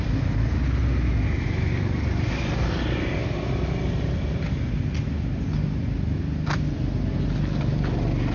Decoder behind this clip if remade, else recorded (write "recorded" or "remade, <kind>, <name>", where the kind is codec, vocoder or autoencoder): recorded